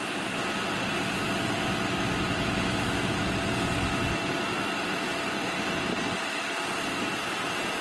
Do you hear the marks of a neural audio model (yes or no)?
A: no